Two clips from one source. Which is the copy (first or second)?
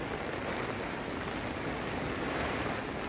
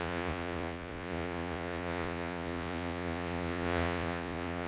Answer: second